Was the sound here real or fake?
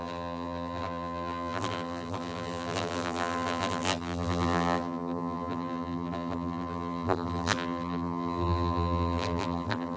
fake